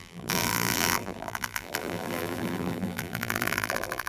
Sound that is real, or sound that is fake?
fake